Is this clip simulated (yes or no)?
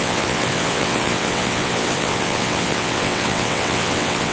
yes